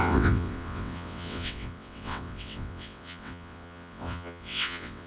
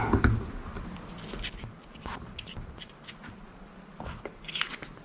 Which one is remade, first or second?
first